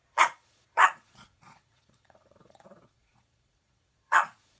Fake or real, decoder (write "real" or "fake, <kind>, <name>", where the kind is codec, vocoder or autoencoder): fake, vocoder, Vocos